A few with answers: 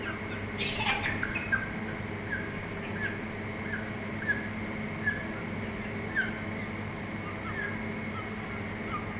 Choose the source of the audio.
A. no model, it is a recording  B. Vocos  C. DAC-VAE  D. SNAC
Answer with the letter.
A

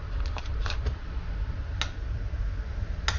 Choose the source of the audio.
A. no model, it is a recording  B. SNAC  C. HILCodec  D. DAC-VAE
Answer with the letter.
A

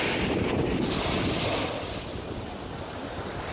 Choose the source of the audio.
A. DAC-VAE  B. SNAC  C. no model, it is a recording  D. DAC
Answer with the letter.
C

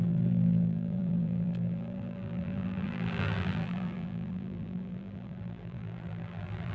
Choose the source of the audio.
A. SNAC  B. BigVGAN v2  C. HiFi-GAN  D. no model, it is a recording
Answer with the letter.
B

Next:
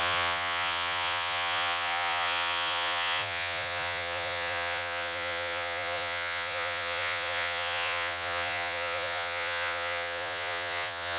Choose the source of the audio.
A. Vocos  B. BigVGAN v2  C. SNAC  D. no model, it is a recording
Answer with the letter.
A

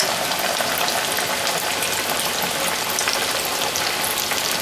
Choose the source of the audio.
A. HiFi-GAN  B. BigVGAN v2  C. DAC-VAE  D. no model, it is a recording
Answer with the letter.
D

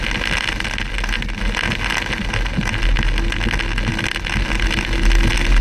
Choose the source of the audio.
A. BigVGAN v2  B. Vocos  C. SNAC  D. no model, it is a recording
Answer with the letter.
D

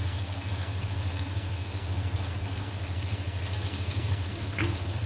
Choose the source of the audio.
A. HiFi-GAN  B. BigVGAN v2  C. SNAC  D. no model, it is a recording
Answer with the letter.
C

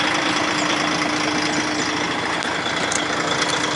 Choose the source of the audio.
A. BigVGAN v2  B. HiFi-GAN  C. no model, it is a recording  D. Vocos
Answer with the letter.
C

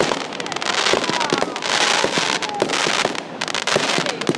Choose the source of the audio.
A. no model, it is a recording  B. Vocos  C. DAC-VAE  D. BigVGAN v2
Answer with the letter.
A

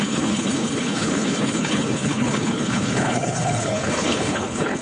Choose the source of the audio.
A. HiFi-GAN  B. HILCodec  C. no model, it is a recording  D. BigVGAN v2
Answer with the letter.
B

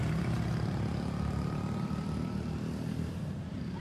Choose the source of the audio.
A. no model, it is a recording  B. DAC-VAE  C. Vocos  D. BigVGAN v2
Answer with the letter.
D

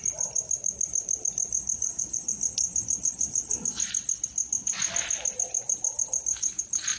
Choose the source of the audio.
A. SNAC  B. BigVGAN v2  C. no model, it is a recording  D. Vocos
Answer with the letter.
C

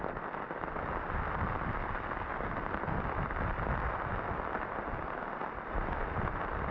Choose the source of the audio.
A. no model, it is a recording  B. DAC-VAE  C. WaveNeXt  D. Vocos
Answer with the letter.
A